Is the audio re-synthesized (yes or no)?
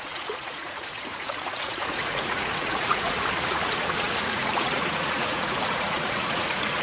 yes